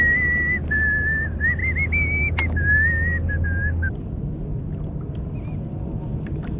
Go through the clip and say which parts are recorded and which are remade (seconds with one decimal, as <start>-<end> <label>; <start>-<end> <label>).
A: 0.0-6.6 recorded